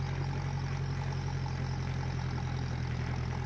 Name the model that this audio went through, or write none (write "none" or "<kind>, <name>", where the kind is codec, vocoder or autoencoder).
none